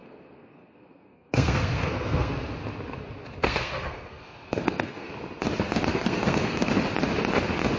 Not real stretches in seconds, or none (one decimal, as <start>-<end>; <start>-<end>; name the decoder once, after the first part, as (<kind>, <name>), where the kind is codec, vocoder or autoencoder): 0.0-2.3 (codec, SNAC); 3.4-5.1; 5.9-6.7